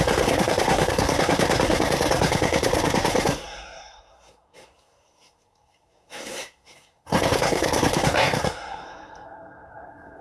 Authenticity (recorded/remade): remade